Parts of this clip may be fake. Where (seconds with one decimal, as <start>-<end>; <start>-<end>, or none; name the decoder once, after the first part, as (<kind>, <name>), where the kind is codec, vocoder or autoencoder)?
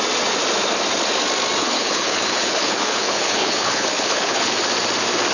1.6-4.5 (codec, HILCodec)